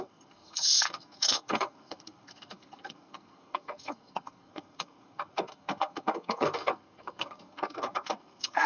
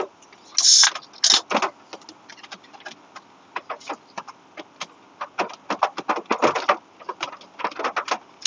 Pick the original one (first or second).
second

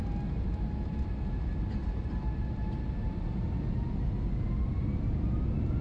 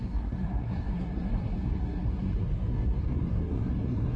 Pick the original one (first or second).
first